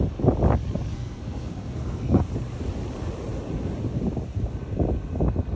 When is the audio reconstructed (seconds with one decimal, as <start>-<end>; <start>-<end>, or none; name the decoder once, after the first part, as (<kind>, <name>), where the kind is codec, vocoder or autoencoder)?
0.9-2.2 (codec, SNAC)